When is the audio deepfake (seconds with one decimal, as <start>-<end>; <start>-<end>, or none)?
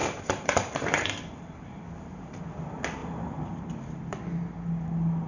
0.0-2.4; 3.0-4.0